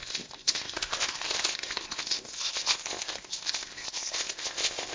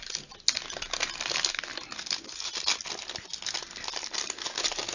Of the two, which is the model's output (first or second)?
first